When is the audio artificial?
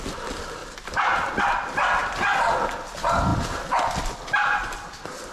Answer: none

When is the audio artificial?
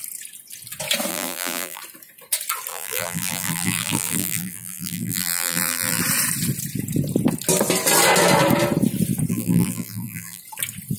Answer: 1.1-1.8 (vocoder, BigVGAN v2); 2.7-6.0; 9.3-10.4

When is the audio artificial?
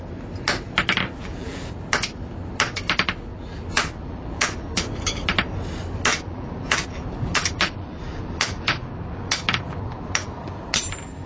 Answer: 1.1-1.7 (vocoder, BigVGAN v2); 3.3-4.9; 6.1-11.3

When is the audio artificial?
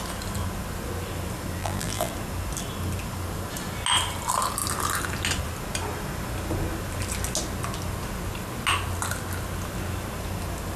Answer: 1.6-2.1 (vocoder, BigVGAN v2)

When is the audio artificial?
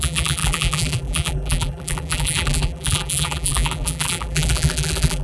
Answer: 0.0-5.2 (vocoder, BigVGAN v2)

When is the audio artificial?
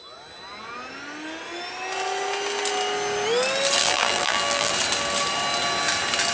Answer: 3.8-4.7 (vocoder, BigVGAN v2)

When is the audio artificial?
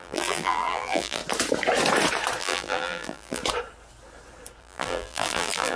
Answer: 0.0-1.2 (vocoder, BigVGAN v2); 2.4-3.4; 4.6-5.8